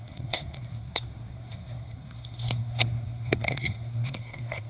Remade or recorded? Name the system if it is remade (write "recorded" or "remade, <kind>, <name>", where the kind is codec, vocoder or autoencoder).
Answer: remade, codec, SNAC